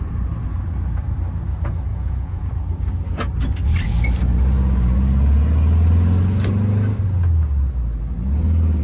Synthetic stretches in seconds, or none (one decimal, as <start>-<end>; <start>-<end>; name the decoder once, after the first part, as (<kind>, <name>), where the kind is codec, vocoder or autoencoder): 1.9-2.5 (vocoder, Vocos)